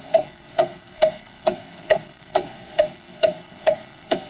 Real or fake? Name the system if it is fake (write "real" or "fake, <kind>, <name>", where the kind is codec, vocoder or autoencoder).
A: fake, codec, SNAC